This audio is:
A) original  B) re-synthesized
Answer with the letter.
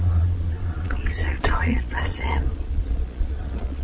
B